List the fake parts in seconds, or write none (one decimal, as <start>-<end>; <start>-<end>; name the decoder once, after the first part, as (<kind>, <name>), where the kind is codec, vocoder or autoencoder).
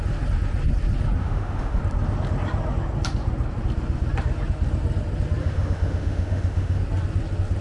1.2-1.8 (autoencoder, DAC-VAE); 5.4-6.8